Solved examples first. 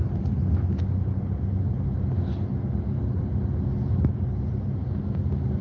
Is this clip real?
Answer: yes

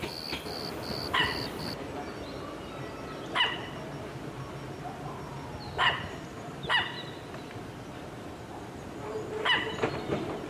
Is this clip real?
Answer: yes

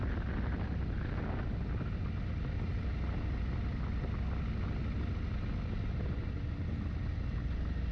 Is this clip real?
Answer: yes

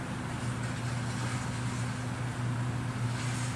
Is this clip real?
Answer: yes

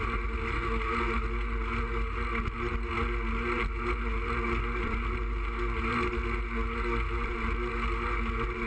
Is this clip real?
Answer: yes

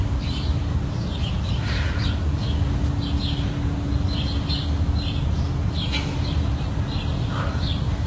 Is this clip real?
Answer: yes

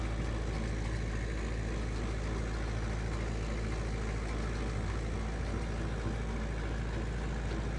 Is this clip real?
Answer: yes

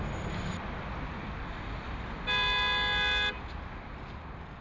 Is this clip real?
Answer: yes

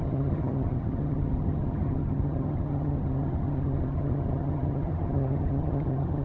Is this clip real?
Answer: no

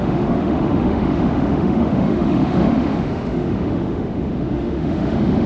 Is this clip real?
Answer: no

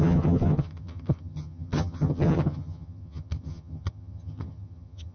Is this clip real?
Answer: no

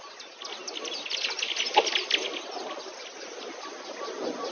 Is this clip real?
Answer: yes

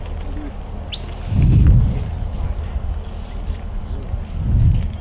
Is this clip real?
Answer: yes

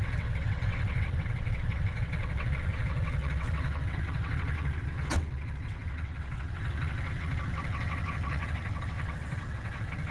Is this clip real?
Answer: no